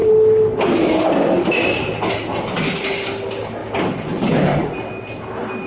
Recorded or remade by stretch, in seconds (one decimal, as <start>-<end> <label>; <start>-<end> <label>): 0.0-5.7 recorded